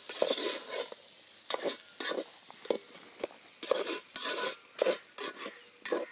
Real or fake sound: real